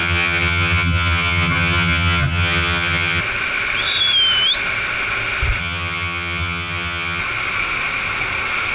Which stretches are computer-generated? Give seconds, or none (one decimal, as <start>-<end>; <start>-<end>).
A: 0.0-3.2; 5.6-7.2